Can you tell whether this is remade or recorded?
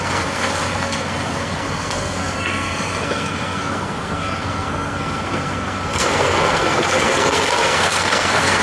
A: remade